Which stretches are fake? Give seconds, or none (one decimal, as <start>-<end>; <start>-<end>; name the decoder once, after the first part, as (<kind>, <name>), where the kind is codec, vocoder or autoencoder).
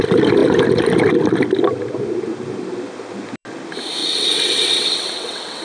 4.0-5.6 (vocoder, WaveNeXt)